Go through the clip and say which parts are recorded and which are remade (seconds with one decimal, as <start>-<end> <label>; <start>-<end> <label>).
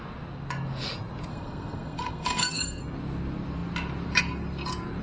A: 0.0-1.3 recorded; 1.3-2.8 remade; 2.8-5.0 recorded